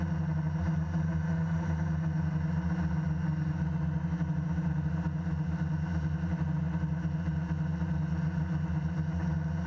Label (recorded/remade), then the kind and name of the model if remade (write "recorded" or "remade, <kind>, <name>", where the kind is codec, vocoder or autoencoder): recorded